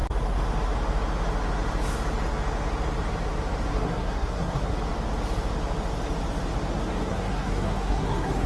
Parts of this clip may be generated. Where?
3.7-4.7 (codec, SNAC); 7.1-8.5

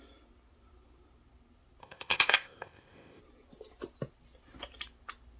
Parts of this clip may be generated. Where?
1.8-3.2 (codec, ZipCodec)

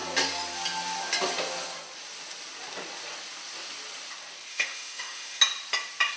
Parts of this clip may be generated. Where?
4.5-5.4 (autoencoder, DAC-VAE)

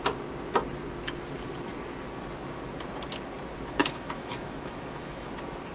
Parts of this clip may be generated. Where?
3.8-5.3 (autoencoder, DAC-VAE)

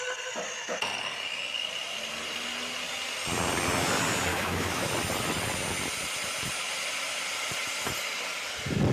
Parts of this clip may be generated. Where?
4.3-4.9 (autoencoder, DAC-VAE)

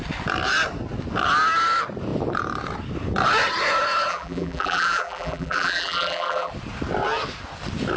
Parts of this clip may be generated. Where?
4.1-6.5 (vocoder, BigVGAN v2)